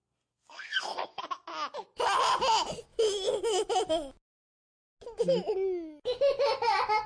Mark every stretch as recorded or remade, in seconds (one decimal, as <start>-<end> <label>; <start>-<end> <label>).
0.0-1.2 remade; 1.2-7.1 recorded